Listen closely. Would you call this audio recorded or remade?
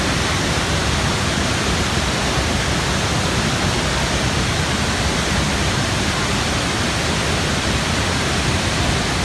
recorded